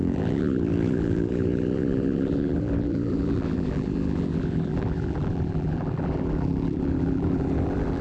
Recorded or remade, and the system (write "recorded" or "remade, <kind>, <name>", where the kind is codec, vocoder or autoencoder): remade, vocoder, BigVGAN v2